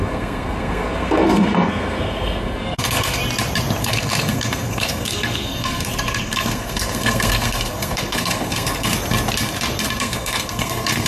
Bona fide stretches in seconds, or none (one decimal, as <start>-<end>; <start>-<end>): 3.2-3.8; 8.9-10.0